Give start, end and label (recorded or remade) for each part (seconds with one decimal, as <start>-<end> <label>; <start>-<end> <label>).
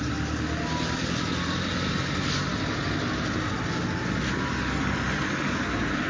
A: 0.0-6.1 recorded